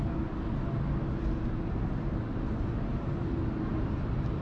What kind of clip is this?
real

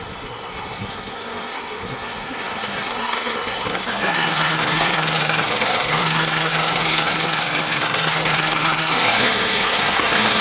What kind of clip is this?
fake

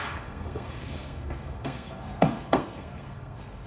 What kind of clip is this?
fake